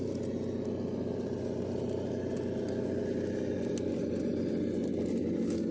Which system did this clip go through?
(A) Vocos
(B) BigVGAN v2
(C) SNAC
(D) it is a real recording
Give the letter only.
D